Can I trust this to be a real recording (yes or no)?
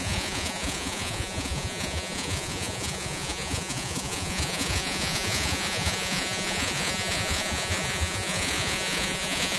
no